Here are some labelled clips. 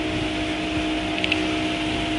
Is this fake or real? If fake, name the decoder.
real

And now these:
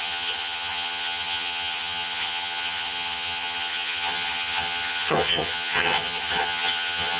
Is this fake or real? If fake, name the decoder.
fake, vocoder, HiFi-GAN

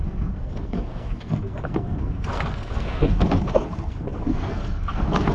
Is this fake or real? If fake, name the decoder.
fake, codec, SNAC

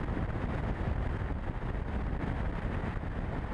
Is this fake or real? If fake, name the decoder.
real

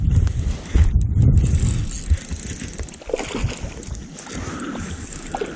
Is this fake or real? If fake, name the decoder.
real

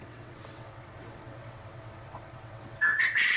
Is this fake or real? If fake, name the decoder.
fake, vocoder, WaveNeXt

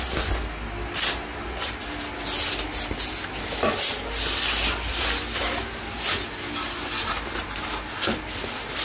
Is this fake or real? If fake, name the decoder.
real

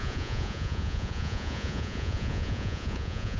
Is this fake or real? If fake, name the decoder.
fake, vocoder, Vocos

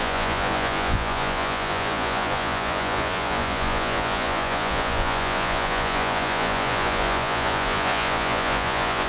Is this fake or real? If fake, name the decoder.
fake, vocoder, Vocos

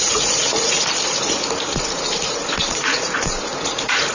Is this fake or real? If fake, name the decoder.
fake, vocoder, Vocos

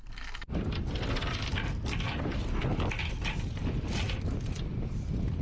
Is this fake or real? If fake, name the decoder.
real